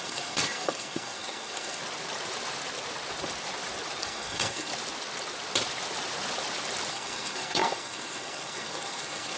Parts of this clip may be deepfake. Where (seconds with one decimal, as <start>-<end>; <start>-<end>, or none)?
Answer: 0.0-1.8; 4.0-4.7; 6.9-9.4